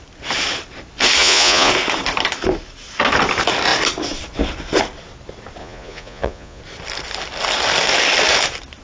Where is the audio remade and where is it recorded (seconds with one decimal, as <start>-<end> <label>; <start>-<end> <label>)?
0.0-1.2 recorded; 1.2-1.7 remade; 1.7-5.6 recorded; 5.6-6.6 remade; 6.6-8.8 recorded